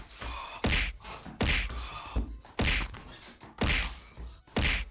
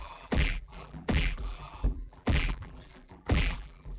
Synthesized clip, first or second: second